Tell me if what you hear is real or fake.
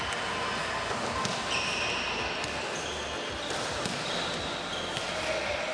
real